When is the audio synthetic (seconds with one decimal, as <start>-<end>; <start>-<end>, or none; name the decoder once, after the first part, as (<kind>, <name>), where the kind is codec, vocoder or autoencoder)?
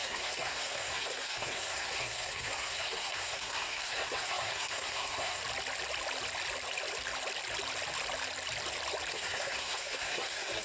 0.0-5.4 (codec, SNAC); 9.1-10.6